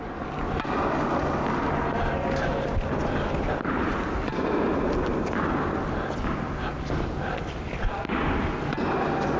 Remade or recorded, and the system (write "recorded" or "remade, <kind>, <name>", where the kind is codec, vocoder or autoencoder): recorded